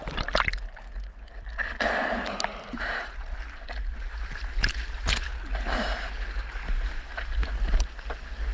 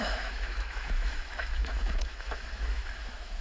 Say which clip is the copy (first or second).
second